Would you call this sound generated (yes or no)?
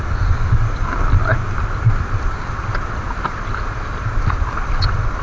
no